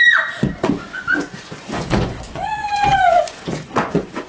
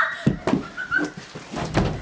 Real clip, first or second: second